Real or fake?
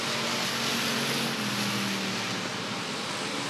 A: real